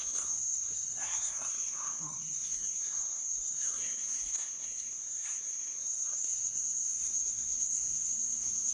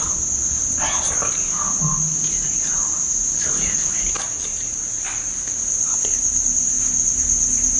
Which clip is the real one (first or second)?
second